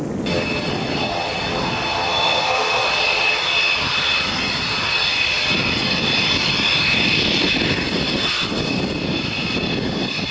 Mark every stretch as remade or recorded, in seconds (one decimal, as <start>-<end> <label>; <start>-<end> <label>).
0.0-1.6 recorded; 1.6-2.9 remade; 2.9-10.3 recorded